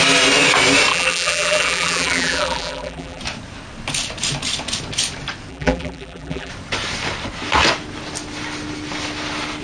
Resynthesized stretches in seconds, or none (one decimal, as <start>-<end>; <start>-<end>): 0.9-3.2; 5.5-6.5